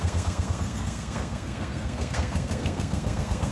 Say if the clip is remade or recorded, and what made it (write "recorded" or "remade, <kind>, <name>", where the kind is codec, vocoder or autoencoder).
remade, codec, SNAC